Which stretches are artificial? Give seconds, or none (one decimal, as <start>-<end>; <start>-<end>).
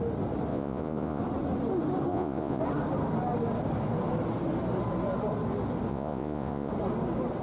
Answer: 0.5-1.2; 2.1-2.6; 5.9-6.7